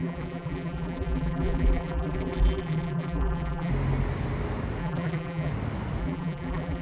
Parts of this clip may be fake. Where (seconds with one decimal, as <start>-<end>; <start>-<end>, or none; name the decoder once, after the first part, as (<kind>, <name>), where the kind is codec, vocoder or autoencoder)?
0.0-3.7 (vocoder, BigVGAN v2); 4.8-5.5; 6.0-6.8